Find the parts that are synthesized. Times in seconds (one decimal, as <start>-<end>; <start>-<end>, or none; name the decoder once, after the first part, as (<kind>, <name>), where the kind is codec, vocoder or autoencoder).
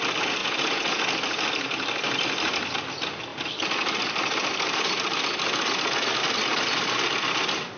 0.4-1.0 (vocoder, Vocos)